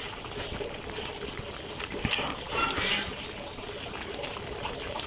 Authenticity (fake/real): real